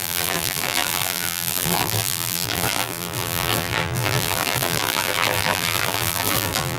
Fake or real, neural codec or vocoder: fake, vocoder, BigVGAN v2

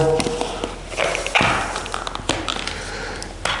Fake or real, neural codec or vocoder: real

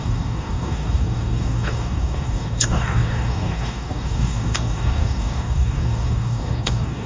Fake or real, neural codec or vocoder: fake, codec, DAC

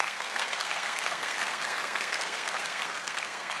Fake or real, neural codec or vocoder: fake, codec, SNAC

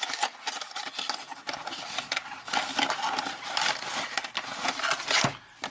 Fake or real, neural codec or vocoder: real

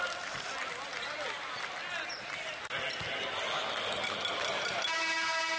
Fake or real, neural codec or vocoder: real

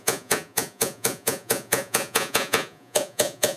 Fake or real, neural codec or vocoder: fake, vocoder, Vocos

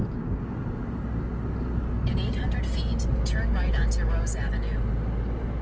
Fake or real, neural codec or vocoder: real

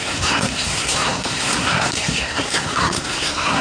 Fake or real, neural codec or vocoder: fake, codec, SNAC